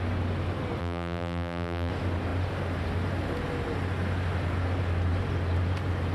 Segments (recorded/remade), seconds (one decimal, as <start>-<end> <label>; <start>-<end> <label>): 0.0-0.8 recorded; 0.8-1.9 remade; 1.9-6.1 recorded